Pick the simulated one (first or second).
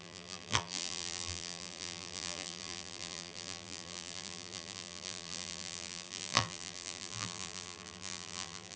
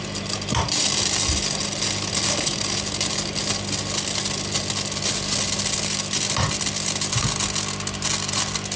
first